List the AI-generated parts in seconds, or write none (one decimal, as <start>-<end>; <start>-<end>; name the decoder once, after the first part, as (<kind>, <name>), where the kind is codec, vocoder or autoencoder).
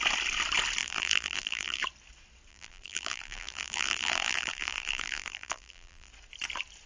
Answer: 0.8-1.8 (vocoder, BigVGAN v2); 2.5-6.1